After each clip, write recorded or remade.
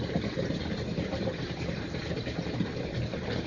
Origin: remade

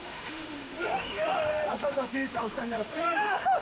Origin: remade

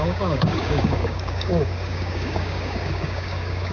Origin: remade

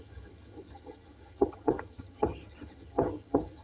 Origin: remade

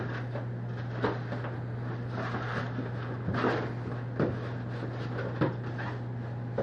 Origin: recorded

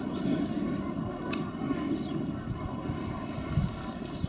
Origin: recorded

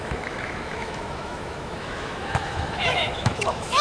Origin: remade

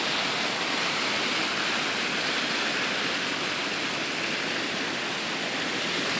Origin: recorded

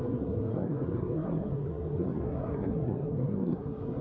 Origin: remade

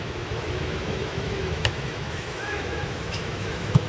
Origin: remade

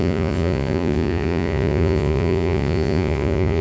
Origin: remade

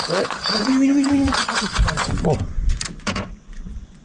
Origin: remade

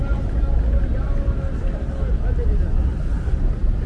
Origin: recorded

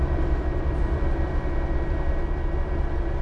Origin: remade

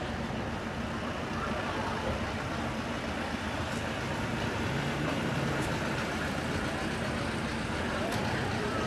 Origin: remade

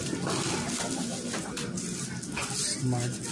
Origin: recorded